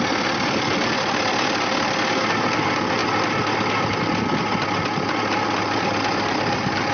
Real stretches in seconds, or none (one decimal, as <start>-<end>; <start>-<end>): 0.0-6.9